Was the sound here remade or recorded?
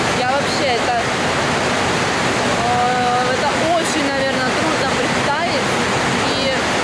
recorded